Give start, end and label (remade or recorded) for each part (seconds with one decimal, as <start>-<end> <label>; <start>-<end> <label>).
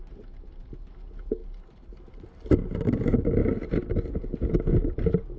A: 0.0-5.4 recorded